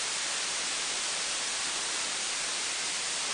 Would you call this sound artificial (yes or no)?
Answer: no